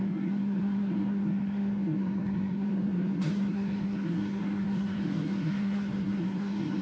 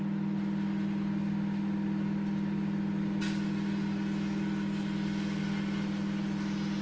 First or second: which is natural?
second